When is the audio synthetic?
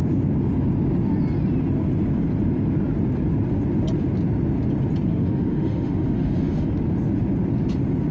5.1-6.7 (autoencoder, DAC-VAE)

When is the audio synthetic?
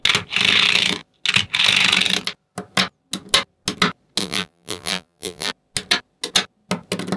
4.2-5.5 (vocoder, BigVGAN v2)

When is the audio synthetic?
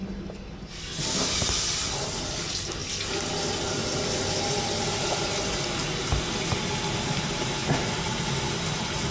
none